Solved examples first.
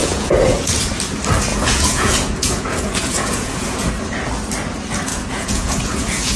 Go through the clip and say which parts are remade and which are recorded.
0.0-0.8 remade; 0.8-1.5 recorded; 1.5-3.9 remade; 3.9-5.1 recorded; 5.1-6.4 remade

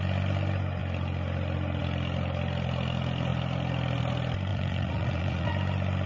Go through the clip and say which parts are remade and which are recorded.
0.0-4.5 recorded; 4.5-5.5 remade; 5.5-6.1 recorded

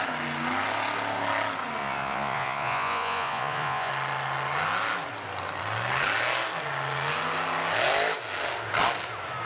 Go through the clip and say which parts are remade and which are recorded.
0.0-1.8 recorded; 1.8-3.9 remade; 3.9-9.5 recorded

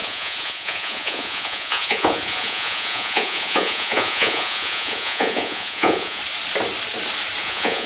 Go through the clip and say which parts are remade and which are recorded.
0.0-6.2 remade; 6.2-7.4 recorded; 7.4-7.9 remade

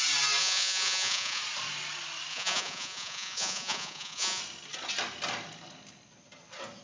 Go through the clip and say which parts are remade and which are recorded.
0.0-0.4 recorded; 0.4-1.4 remade; 1.4-2.3 recorded; 2.3-4.4 remade; 4.4-6.8 recorded

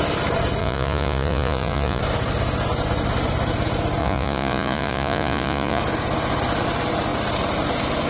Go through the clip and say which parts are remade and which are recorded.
0.0-0.6 recorded; 0.6-2.0 remade; 2.0-4.0 recorded; 4.0-5.8 remade; 5.8-8.1 recorded